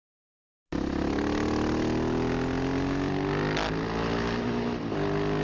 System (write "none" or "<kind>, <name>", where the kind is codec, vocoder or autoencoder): none